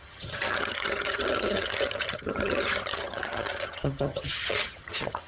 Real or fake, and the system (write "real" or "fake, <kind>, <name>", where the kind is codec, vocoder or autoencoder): fake, vocoder, HiFi-GAN